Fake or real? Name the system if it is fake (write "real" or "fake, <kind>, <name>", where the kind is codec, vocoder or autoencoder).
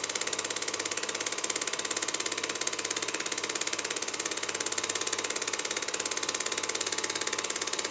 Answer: real